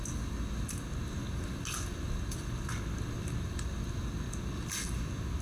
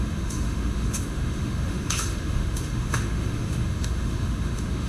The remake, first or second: second